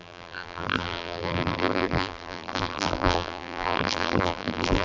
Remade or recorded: remade